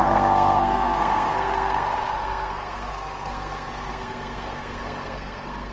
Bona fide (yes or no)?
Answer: no